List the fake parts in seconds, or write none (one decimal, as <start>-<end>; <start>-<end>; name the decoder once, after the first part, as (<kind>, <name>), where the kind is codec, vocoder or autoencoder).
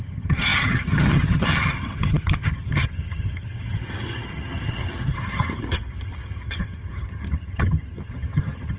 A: 0.0-8.8 (vocoder, HiFi-GAN)